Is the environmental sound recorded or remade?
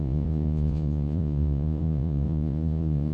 remade